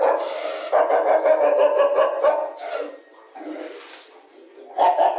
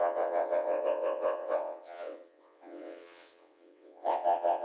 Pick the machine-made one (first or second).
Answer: second